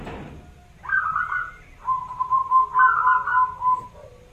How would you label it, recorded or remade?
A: recorded